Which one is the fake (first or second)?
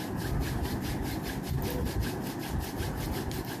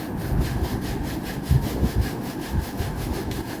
second